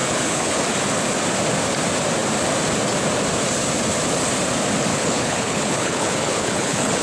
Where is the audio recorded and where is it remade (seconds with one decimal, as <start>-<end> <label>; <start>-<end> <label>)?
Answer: 0.0-0.6 remade; 0.6-4.9 recorded; 4.9-7.0 remade